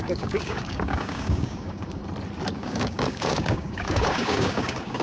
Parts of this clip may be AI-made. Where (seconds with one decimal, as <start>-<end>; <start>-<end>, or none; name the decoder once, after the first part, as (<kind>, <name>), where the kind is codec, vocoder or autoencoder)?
0.0-2.0 (codec, DAC); 2.5-5.0